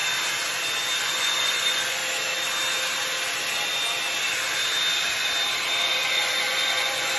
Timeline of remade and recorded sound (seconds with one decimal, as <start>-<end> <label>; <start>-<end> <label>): 0.0-1.0 recorded; 1.0-2.0 remade; 2.0-5.8 recorded; 5.8-7.2 remade

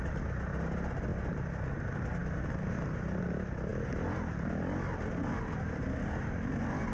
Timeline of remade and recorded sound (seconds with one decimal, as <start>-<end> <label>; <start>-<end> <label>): 0.0-6.9 recorded

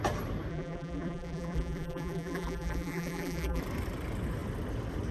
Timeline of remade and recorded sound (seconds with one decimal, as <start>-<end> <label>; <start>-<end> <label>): 0.0-0.5 recorded; 0.5-3.6 remade; 3.6-5.1 recorded

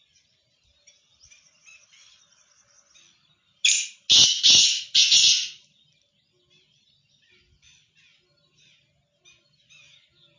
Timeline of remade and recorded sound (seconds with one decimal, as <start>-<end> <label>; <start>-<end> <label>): 0.0-10.4 recorded

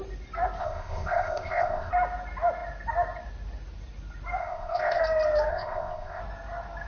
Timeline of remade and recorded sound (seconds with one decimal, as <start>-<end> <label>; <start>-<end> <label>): 0.0-0.6 recorded; 0.6-1.9 remade; 1.9-4.4 recorded; 4.4-5.0 remade; 5.0-5.5 recorded; 5.5-6.2 remade; 6.2-6.9 recorded